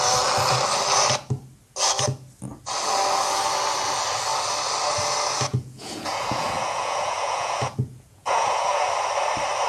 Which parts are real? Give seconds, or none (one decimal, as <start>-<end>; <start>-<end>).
0.0-5.5; 8.9-9.7